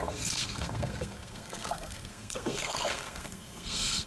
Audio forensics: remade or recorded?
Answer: remade